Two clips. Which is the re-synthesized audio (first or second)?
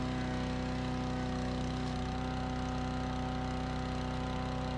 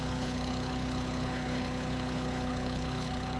second